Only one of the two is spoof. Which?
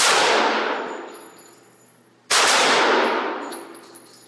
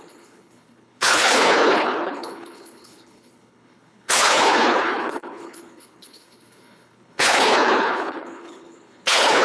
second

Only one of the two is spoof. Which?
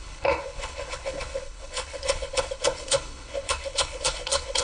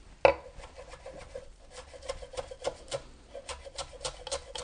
first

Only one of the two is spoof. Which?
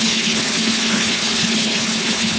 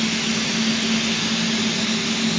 first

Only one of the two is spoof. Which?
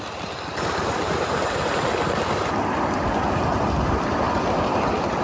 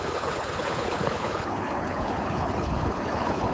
second